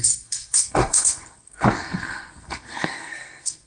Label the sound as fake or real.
fake